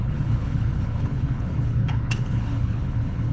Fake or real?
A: fake